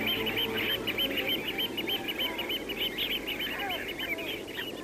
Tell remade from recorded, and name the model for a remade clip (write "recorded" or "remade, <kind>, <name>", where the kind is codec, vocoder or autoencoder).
recorded